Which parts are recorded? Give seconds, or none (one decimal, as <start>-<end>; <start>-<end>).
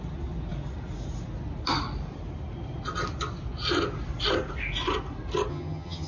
0.0-5.5